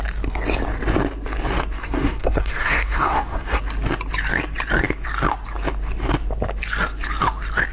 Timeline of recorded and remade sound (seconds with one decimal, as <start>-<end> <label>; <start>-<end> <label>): 0.0-1.8 recorded; 1.8-3.6 remade; 3.6-7.7 recorded